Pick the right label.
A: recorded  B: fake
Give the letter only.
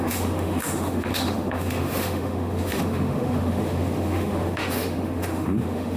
B